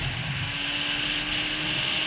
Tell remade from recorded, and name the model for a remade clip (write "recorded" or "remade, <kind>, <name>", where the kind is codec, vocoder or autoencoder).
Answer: recorded